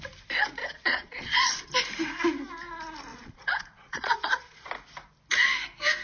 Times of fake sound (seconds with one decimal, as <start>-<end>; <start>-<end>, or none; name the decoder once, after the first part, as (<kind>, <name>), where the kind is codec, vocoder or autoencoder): 0.6-1.7 (vocoder, Vocos); 3.1-4.7